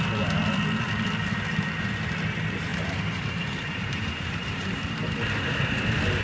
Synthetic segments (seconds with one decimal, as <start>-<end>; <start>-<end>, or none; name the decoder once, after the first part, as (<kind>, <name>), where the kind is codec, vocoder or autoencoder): 2.7-4.8 (vocoder, BigVGAN v2)